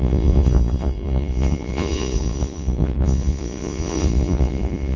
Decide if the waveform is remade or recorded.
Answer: remade